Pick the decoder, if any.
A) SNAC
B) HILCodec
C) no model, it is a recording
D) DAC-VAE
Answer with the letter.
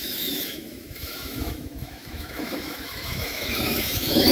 D